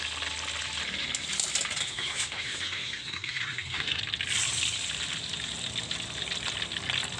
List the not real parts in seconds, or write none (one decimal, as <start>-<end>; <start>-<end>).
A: 1.8-4.0